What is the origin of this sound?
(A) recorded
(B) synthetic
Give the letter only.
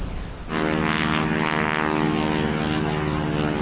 A